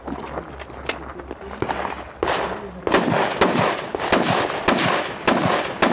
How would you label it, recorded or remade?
recorded